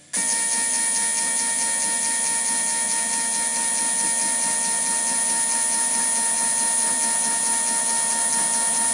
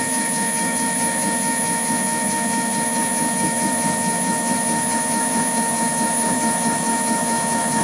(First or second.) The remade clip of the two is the second